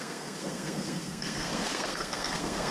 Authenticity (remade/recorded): remade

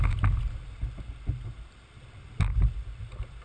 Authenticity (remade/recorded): recorded